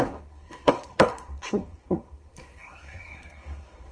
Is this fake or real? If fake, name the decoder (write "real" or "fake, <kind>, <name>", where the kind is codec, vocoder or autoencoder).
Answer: fake, codec, SNAC